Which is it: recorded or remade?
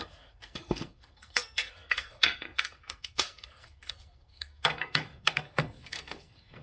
remade